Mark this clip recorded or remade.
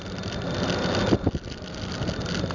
recorded